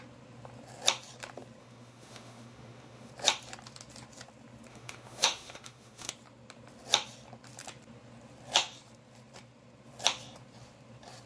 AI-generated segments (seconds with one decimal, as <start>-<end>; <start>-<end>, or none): 1.6-3.1; 4.7-6.1